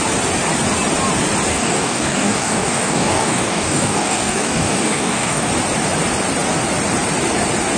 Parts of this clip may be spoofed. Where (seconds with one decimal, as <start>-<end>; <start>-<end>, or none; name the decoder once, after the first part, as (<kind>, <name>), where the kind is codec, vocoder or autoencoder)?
1.5-5.5 (codec, DAC)